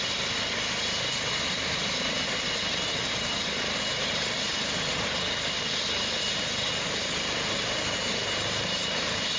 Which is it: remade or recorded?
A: recorded